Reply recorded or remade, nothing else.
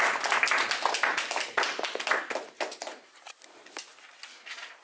recorded